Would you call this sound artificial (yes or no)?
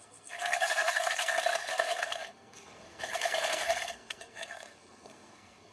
yes